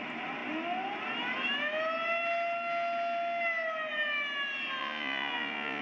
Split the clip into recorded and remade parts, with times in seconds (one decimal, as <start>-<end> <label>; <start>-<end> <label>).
0.0-4.8 recorded; 4.8-5.8 remade